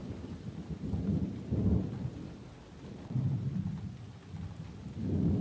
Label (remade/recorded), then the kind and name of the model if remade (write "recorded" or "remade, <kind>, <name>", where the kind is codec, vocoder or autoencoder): recorded